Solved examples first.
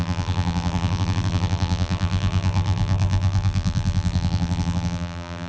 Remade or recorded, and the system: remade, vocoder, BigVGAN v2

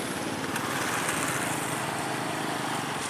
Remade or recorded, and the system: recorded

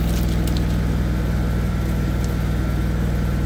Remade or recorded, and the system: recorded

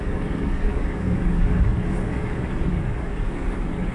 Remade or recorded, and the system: remade, codec, DAC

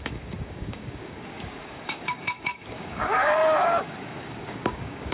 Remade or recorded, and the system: remade, codec, DAC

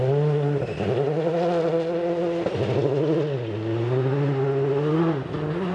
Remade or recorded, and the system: recorded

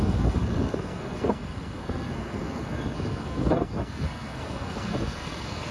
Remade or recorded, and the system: remade, codec, SNAC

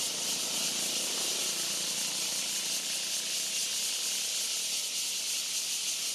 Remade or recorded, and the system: recorded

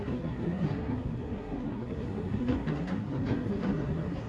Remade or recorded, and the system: remade, codec, SNAC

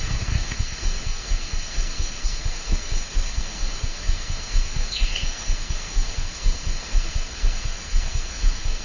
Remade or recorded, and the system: remade, codec, SNAC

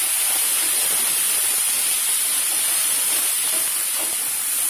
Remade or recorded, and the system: recorded